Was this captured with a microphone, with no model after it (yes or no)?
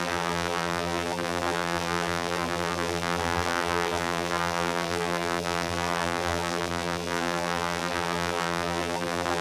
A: no